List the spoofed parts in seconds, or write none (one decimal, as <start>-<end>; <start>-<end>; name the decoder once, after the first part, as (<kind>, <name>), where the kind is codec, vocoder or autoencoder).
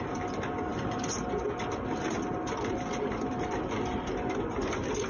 none